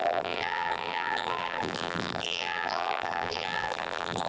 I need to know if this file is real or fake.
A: fake